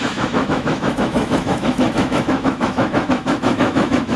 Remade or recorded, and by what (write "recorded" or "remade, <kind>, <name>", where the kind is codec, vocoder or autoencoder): remade, autoencoder, DAC-VAE